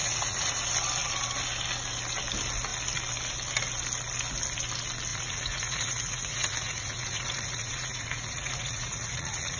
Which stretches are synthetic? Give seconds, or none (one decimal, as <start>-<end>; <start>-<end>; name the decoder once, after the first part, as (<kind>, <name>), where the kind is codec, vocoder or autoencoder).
0.0-0.5 (vocoder, Vocos); 5.1-9.6